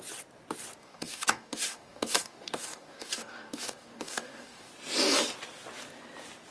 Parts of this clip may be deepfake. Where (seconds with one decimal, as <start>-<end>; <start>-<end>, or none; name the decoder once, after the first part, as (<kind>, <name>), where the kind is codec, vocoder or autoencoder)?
0.8-4.7 (codec, DAC)